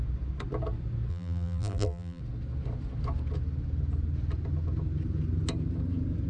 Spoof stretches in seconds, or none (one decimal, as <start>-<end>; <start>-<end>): 1.1-2.2

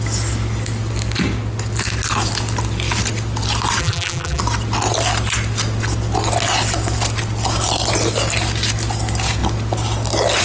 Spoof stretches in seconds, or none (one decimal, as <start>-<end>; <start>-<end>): 3.8-4.4

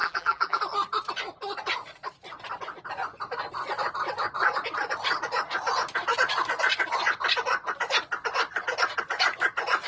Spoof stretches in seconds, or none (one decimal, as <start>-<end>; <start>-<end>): 0.0-0.6

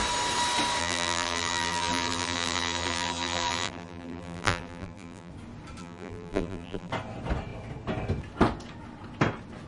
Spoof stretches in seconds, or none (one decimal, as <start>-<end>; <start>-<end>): 0.8-5.3; 5.8-6.9